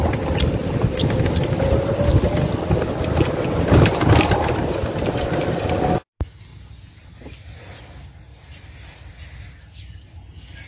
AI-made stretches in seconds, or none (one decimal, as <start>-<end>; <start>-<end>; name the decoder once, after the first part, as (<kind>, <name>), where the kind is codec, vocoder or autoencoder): none